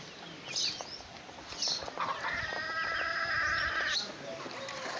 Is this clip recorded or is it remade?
recorded